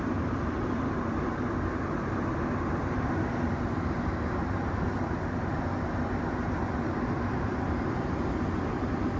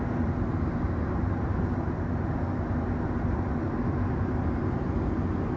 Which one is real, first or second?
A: second